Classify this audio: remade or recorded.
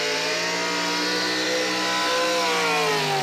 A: recorded